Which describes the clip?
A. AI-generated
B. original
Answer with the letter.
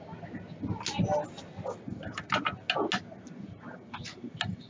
B